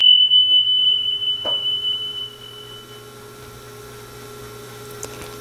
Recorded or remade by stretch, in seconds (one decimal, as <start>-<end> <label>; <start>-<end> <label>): 0.0-0.8 recorded; 0.8-2.2 remade; 2.2-5.4 recorded